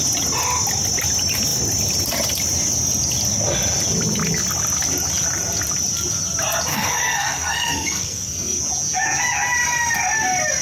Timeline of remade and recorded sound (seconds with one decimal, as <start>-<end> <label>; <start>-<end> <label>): 0.0-6.7 recorded; 6.7-8.6 remade; 8.6-10.6 recorded